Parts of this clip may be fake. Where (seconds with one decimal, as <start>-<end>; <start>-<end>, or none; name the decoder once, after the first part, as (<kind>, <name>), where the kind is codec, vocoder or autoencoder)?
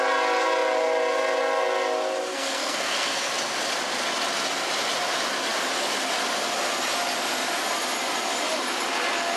2.3-3.3 (codec, SNAC)